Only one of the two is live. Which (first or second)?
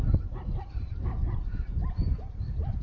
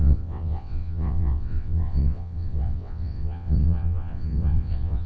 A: first